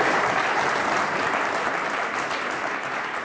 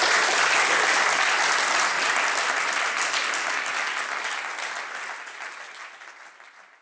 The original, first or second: second